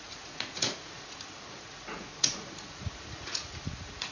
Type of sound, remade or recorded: remade